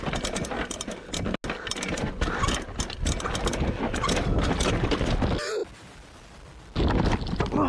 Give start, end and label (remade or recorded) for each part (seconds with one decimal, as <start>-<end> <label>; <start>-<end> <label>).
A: 0.0-7.7 recorded